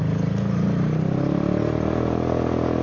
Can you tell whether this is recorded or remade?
recorded